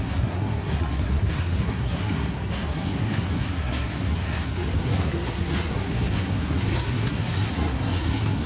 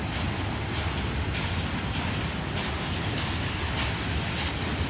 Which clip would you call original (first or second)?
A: second